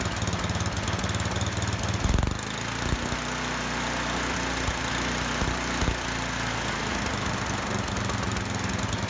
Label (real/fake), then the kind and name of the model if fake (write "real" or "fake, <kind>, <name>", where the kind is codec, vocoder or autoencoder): real